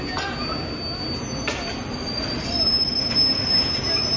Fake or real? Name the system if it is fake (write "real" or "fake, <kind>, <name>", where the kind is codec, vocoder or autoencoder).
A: real